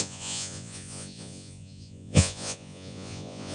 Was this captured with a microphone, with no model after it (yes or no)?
no